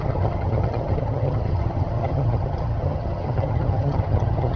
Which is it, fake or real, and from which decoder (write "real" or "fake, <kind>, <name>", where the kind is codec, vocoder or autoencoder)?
fake, vocoder, HiFi-GAN